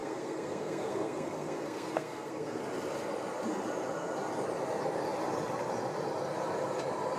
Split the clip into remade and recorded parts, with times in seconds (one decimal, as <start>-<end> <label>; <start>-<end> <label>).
0.0-2.6 remade; 2.6-7.2 recorded